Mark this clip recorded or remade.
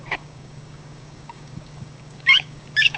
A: remade